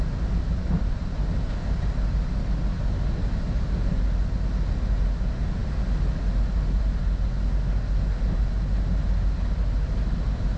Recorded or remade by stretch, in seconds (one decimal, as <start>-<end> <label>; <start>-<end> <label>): 0.0-10.6 recorded